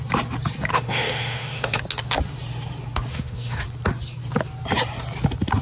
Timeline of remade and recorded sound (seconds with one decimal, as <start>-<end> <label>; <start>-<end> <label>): 0.0-0.7 recorded; 0.7-1.8 remade; 1.8-3.1 recorded; 3.1-3.6 remade; 3.6-5.6 recorded